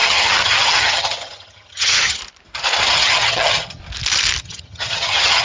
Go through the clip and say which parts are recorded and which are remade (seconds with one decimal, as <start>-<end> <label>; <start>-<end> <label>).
0.0-2.2 remade; 2.2-2.9 recorded; 2.9-3.8 remade; 3.8-4.4 recorded; 4.4-5.4 remade